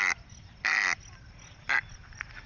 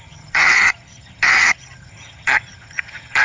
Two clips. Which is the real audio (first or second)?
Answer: first